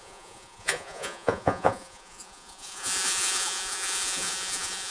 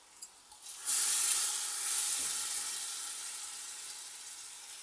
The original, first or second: second